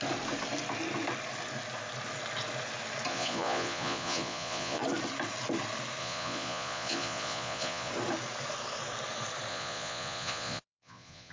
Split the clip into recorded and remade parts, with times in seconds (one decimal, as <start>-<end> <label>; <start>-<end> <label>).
0.0-3.1 recorded; 3.1-4.8 remade; 4.8-6.0 recorded; 6.0-7.9 remade; 7.9-9.5 recorded; 9.5-11.3 remade